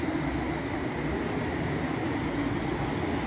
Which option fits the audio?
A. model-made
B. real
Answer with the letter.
B